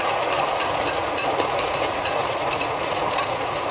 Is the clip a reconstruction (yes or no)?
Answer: yes